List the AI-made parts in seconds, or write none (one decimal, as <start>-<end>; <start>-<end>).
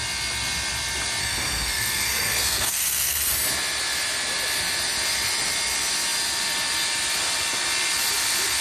1.2-3.3